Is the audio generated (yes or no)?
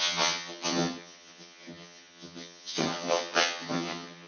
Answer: yes